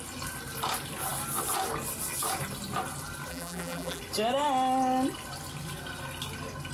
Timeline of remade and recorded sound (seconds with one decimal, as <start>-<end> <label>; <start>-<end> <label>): 0.0-3.3 recorded; 3.3-4.0 remade; 4.0-6.7 recorded